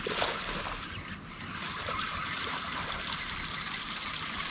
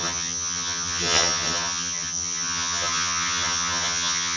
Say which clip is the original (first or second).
first